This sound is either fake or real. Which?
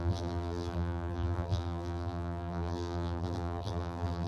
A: fake